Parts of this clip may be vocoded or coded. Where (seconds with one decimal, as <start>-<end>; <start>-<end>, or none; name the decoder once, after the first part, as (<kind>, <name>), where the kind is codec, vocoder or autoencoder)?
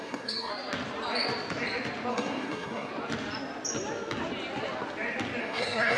0.0-0.5 (codec, SNAC); 2.1-2.9; 5.4-6.0